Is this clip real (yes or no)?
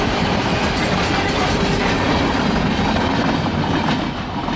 yes